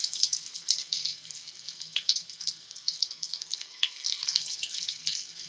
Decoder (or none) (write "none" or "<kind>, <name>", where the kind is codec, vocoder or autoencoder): codec, SNAC